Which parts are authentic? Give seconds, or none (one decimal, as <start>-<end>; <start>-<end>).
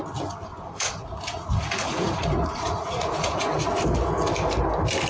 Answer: 0.0-0.5; 3.6-5.1